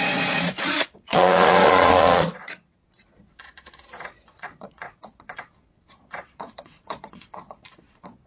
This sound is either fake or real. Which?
fake